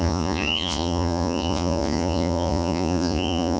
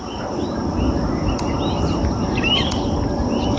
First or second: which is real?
second